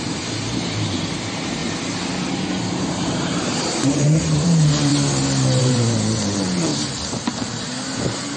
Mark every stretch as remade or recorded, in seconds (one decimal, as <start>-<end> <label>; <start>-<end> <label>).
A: 0.0-1.6 remade; 1.6-2.3 recorded; 2.3-4.9 remade; 4.9-5.6 recorded; 5.6-6.7 remade; 6.7-7.2 recorded; 7.2-8.4 remade

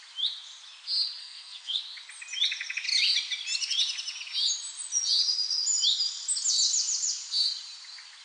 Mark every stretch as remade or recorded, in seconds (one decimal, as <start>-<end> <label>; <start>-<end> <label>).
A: 0.0-1.2 recorded; 1.2-1.8 remade; 1.8-8.2 recorded

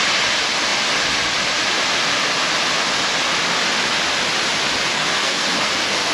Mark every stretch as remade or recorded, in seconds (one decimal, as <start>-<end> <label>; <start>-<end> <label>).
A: 0.0-4.9 recorded; 4.9-6.1 remade

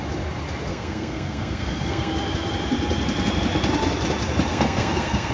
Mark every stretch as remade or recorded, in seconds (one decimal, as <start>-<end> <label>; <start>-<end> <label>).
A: 0.0-0.7 recorded; 0.7-2.1 remade; 2.1-4.5 recorded; 4.5-5.3 remade

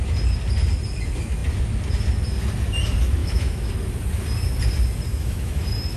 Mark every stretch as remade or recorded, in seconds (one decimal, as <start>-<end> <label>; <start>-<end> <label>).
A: 0.0-3.2 recorded; 3.2-3.7 remade; 3.7-5.1 recorded; 5.1-5.6 remade; 5.6-6.0 recorded

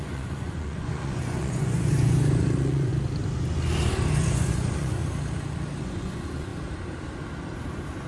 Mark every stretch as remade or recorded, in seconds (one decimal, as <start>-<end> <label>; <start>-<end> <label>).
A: 0.0-2.9 remade; 2.9-4.1 recorded; 4.1-5.0 remade; 5.0-5.8 recorded; 5.8-6.5 remade; 6.5-8.1 recorded

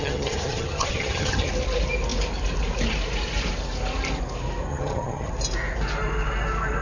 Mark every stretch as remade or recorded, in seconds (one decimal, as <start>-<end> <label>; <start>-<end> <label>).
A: 0.0-1.5 remade; 1.5-4.7 recorded; 4.7-5.3 remade; 5.3-6.8 recorded